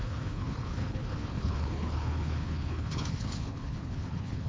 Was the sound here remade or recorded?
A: remade